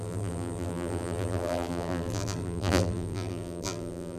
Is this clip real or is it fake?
fake